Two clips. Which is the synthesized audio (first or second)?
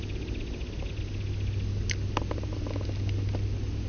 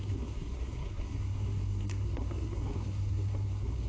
second